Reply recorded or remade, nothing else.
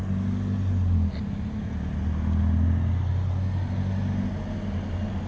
recorded